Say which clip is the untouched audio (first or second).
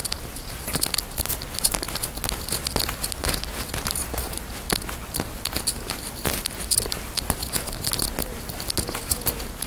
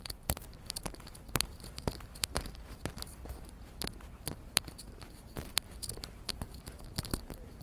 first